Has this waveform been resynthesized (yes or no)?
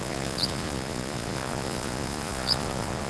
yes